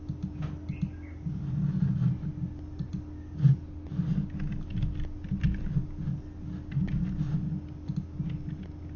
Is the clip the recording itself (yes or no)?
yes